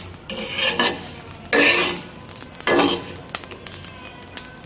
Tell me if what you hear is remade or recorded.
recorded